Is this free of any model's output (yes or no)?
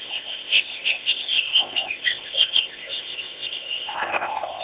no